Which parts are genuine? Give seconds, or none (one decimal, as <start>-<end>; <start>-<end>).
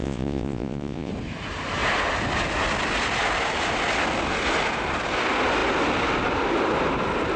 1.1-7.4